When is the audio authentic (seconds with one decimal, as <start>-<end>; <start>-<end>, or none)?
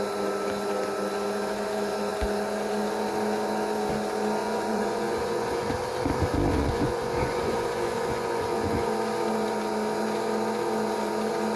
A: 0.0-4.4; 5.7-6.6; 8.9-11.6